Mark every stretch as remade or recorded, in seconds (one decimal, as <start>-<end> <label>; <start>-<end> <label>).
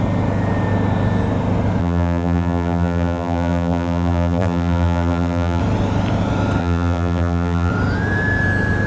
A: 0.0-1.8 recorded; 1.8-5.6 remade; 5.6-6.6 recorded; 6.6-7.7 remade; 7.7-8.9 recorded